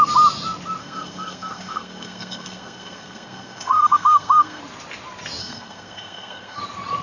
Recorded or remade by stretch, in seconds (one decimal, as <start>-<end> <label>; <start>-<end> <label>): 0.0-0.8 recorded; 0.8-4.6 remade; 4.6-5.4 recorded; 5.4-6.6 remade; 6.6-7.0 recorded